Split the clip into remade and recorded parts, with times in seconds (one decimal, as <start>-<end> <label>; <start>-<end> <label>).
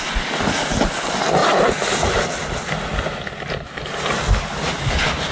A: 0.0-5.3 recorded